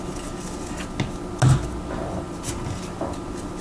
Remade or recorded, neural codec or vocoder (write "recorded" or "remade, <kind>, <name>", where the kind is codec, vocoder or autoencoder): recorded